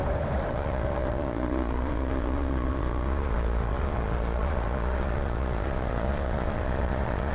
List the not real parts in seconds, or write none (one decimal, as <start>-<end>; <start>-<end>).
0.5-7.3